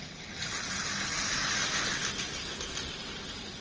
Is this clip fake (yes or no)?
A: no